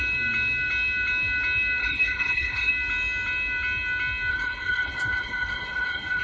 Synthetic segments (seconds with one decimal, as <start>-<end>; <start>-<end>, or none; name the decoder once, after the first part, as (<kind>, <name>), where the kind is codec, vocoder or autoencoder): 1.8-2.7 (codec, HILCodec); 4.3-6.2